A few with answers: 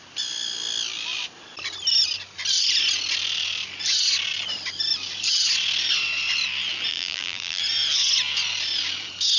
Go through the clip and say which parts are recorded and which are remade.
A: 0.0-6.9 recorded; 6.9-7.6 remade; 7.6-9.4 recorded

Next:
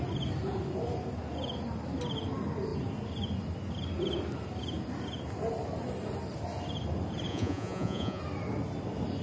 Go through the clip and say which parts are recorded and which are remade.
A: 0.0-7.3 recorded; 7.3-8.2 remade; 8.2-9.2 recorded

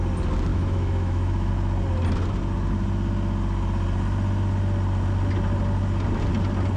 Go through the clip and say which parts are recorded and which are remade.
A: 0.0-0.5 recorded; 0.5-1.5 remade; 1.5-6.8 recorded

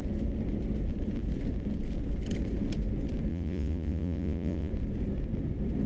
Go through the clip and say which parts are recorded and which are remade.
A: 0.0-3.3 recorded; 3.3-4.7 remade; 4.7-5.9 recorded